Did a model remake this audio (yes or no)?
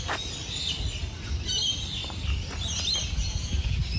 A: no